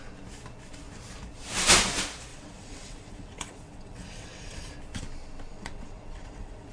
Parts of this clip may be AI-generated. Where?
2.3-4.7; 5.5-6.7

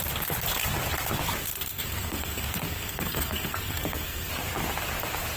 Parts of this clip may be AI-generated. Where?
1.4-4.3

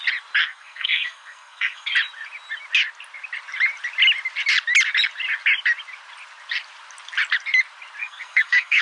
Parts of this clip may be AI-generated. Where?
0.4-1.9; 8.0-8.8